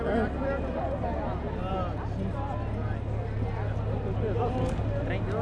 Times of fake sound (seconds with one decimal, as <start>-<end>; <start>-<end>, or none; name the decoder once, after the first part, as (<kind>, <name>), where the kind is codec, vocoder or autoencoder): none